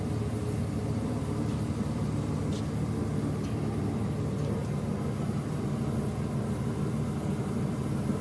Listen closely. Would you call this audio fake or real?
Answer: real